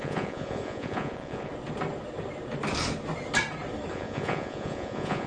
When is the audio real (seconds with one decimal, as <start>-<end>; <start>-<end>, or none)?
1.5-3.9